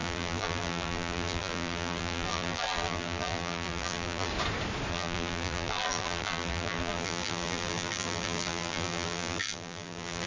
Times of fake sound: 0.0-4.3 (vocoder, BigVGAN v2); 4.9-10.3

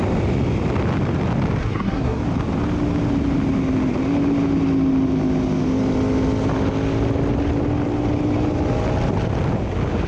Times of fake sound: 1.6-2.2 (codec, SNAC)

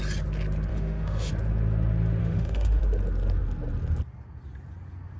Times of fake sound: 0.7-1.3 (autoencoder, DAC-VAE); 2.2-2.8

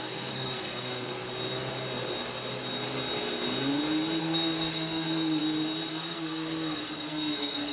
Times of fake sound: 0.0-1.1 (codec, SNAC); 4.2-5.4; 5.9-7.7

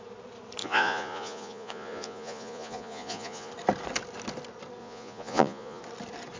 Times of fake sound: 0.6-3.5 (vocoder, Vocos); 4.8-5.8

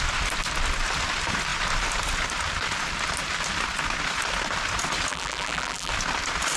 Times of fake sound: 5.1-5.9 (vocoder, BigVGAN v2)

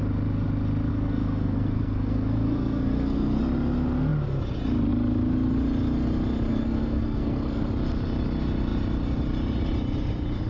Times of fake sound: 0.9-3.4 (codec, SNAC); 6.5-7.7